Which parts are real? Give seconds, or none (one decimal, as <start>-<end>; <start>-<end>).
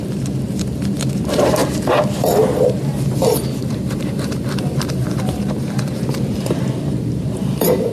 1.6-2.2